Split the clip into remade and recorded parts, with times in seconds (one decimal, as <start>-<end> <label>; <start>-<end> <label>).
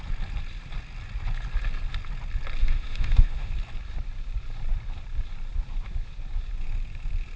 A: 0.0-2.6 recorded; 2.6-3.5 remade; 3.5-7.4 recorded